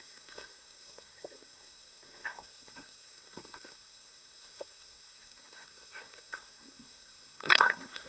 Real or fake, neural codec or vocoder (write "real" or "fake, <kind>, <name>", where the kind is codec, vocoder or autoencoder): fake, codec, SNAC